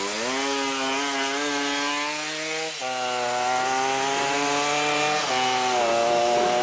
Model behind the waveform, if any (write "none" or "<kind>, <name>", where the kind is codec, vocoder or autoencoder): none